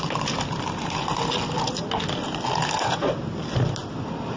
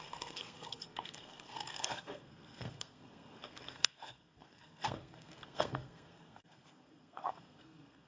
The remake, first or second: second